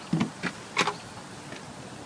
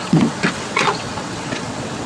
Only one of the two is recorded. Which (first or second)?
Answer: first